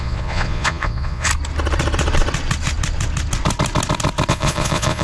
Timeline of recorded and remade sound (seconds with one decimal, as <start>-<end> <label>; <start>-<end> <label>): 0.0-1.3 remade; 1.3-4.3 recorded; 4.3-5.0 remade